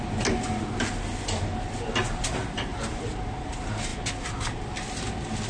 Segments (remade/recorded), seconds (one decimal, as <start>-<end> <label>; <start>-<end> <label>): 0.0-2.7 recorded; 2.7-3.2 remade; 3.2-5.5 recorded